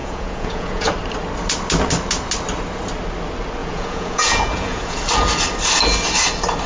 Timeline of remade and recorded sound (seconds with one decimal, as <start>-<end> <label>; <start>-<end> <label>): 0.0-0.9 remade; 0.9-3.6 recorded; 3.6-5.0 remade; 5.0-6.7 recorded

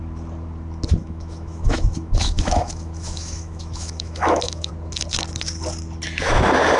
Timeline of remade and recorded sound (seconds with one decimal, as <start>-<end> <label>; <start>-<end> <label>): 0.0-1.0 recorded; 1.0-4.7 remade; 4.7-6.8 recorded

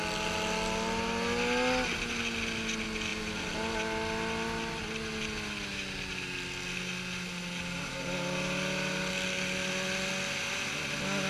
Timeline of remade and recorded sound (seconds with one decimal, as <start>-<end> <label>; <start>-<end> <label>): 0.0-11.3 recorded